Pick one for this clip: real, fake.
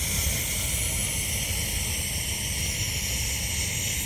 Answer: real